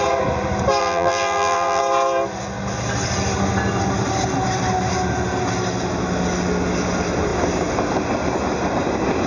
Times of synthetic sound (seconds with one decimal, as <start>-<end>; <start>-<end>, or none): 0.8-1.8